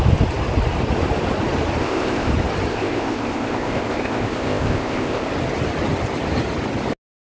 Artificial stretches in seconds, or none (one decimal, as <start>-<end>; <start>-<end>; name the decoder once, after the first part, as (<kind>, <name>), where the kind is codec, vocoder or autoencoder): 1.8-2.3 (codec, ZipCodec); 2.7-5.3